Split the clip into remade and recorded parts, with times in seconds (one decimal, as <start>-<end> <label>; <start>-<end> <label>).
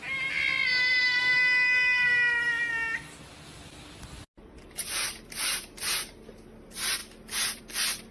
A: 0.0-8.1 recorded